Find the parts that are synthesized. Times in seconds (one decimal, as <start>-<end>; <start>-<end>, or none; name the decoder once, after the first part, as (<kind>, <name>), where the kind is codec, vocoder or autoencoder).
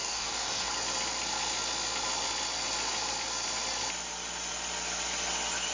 0.0-0.7 (codec, DAC)